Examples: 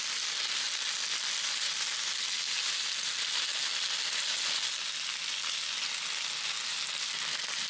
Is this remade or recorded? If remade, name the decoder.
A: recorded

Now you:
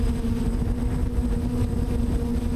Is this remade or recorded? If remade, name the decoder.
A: recorded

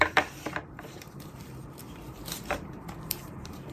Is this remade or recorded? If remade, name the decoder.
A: remade, vocoder, BigVGAN v2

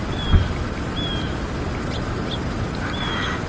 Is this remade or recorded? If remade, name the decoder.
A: recorded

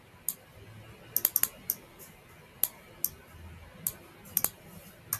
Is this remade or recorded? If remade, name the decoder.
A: recorded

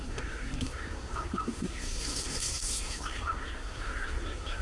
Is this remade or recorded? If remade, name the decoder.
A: remade, codec, SNAC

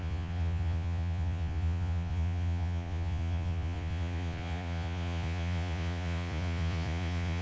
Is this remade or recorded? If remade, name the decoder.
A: remade, vocoder, Vocos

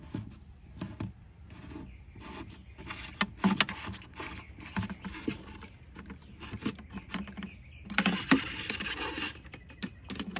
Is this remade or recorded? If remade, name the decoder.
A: recorded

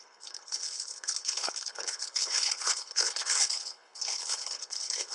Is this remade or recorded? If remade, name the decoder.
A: remade, codec, HILCodec